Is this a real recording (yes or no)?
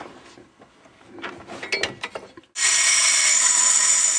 yes